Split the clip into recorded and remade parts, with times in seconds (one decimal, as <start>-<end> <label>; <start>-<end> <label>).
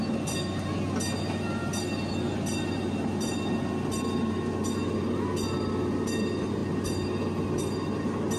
0.0-8.4 recorded